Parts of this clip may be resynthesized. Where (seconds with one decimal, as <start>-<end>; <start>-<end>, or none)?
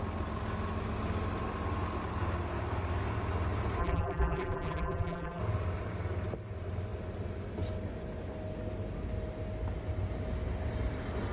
3.8-5.4